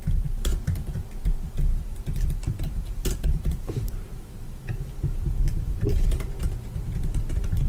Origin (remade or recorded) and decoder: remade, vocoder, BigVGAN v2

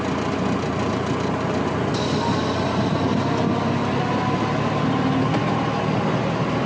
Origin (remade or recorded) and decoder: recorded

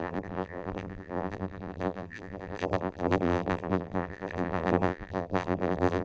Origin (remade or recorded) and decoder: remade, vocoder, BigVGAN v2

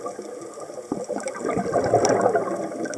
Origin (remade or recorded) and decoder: recorded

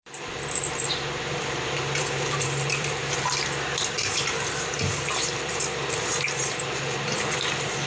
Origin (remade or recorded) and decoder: remade, vocoder, BigVGAN v2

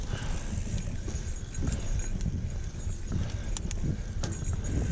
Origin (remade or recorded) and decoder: recorded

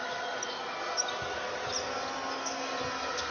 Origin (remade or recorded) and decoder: recorded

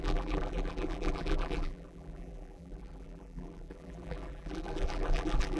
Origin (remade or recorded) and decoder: remade, vocoder, BigVGAN v2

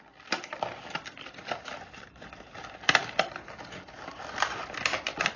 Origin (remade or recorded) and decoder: recorded